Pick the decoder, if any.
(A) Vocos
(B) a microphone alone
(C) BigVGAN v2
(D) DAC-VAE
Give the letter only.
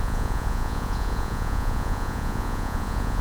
A